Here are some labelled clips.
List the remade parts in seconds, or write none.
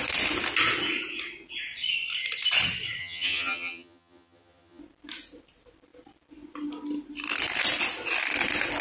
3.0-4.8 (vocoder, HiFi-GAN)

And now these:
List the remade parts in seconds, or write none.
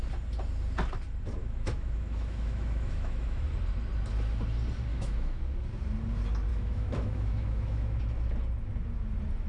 1.4-3.5 (autoencoder, DAC-VAE); 4.9-5.4; 6.5-8.0